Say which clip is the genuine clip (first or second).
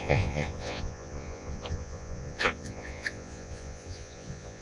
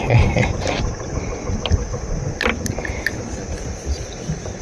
second